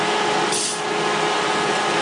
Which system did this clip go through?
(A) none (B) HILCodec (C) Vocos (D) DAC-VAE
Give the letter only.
A